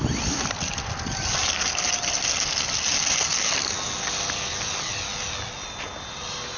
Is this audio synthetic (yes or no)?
no